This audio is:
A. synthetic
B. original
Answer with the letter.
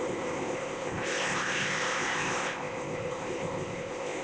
A